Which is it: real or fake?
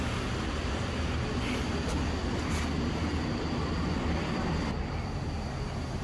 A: real